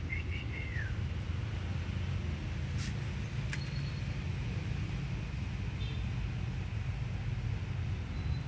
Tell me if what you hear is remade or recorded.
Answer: recorded